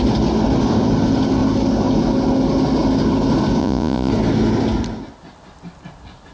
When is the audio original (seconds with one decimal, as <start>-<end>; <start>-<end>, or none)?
0.0-3.6; 4.1-6.3